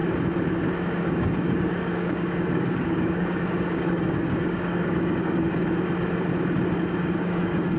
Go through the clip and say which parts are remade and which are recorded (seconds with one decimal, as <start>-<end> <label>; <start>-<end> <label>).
0.0-1.0 recorded; 1.0-5.6 remade; 5.6-7.0 recorded; 7.0-7.8 remade

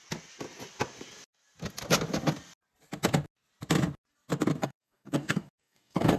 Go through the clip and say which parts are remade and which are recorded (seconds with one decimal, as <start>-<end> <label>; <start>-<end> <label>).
0.0-4.6 recorded; 4.6-6.2 remade

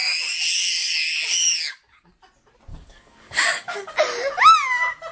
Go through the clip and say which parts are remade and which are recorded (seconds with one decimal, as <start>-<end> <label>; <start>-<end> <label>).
0.0-2.1 remade; 2.1-2.7 recorded; 2.7-3.9 remade; 3.9-5.1 recorded

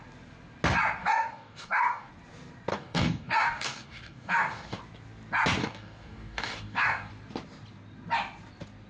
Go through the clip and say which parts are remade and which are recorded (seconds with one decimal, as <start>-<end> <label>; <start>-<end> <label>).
0.0-1.0 recorded; 1.0-2.1 remade; 2.1-2.7 recorded; 2.7-4.8 remade; 4.8-5.6 recorded; 5.6-7.1 remade; 7.1-8.9 recorded

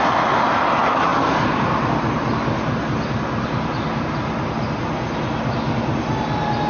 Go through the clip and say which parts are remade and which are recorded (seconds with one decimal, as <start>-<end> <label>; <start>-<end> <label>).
0.0-6.7 recorded

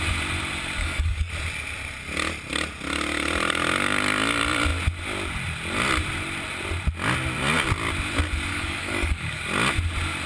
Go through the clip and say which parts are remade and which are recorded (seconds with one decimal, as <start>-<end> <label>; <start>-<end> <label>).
0.0-0.8 recorded; 0.8-1.3 remade; 1.3-8.5 recorded; 8.5-9.4 remade; 9.4-10.3 recorded